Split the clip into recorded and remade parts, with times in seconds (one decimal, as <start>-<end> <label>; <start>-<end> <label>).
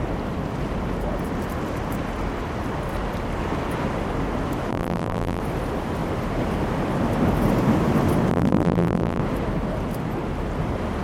0.0-4.7 recorded; 4.7-5.4 remade; 5.4-8.3 recorded; 8.3-9.2 remade; 9.2-11.0 recorded